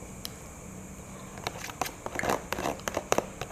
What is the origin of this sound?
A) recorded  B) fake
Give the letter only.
B